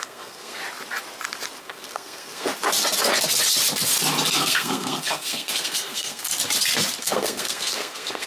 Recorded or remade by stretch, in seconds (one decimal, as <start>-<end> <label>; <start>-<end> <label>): 0.0-0.6 remade; 0.6-1.6 recorded; 1.6-2.5 remade; 2.5-4.4 recorded; 4.4-6.3 remade; 6.3-7.0 recorded; 7.0-8.3 remade